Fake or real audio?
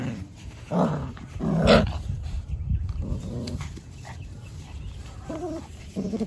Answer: fake